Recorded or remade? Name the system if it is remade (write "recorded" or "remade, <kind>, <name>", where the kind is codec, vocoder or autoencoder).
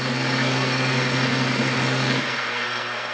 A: remade, codec, SNAC